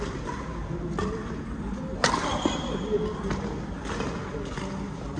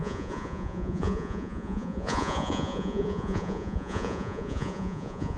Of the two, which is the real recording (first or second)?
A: first